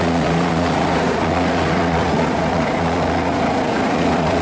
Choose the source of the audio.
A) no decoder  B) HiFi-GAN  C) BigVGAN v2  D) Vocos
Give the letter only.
D